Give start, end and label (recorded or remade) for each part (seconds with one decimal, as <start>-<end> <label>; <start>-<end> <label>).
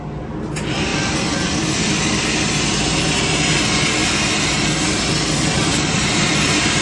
0.0-0.9 recorded; 0.9-2.5 remade; 2.5-5.7 recorded; 5.7-6.8 remade